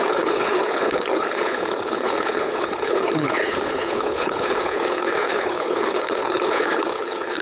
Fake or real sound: fake